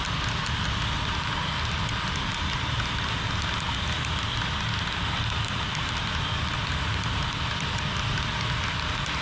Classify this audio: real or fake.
real